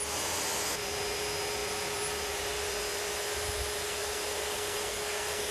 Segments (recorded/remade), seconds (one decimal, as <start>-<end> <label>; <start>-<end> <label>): 0.0-3.8 recorded; 3.8-5.5 remade